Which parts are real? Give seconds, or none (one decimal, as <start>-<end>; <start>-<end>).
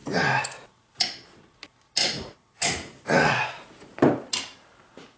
0.0-2.0; 4.0-5.2